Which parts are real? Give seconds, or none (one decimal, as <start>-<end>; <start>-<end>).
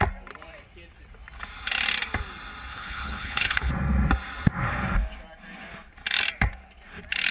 0.0-2.7; 3.7-7.3